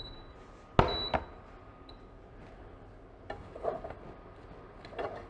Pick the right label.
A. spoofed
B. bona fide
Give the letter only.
B